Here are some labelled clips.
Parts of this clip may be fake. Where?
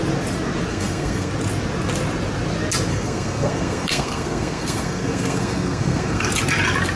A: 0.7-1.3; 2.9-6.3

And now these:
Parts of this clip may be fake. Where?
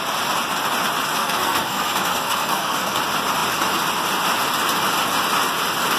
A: 1.2-3.0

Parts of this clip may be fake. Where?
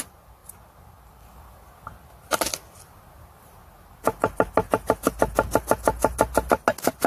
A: none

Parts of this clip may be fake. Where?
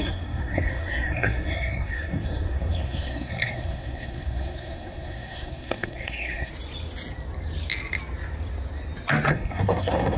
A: 0.0-6.5; 9.3-10.2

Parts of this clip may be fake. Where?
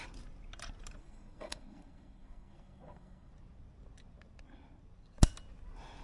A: 1.0-3.3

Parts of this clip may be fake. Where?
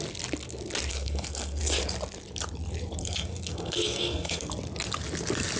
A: 0.9-1.6; 3.0-4.5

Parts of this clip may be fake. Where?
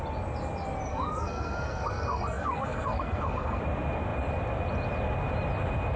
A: 0.9-3.6